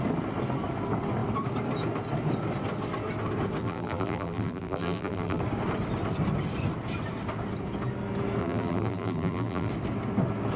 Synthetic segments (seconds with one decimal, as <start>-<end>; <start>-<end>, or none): 3.6-5.4; 8.4-9.7